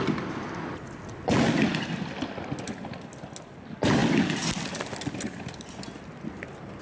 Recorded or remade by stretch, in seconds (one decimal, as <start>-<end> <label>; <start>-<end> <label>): 0.0-6.8 recorded